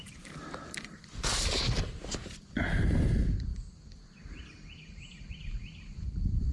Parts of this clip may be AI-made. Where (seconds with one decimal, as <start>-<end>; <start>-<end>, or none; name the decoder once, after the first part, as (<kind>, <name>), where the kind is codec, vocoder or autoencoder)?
0.0-3.5 (vocoder, BigVGAN v2); 5.3-6.5